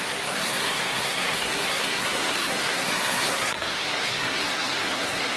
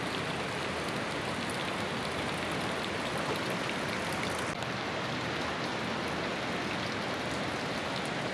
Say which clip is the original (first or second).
second